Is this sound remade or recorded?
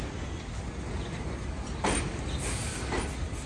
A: recorded